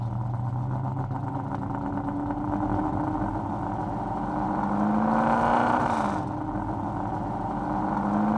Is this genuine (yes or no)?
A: yes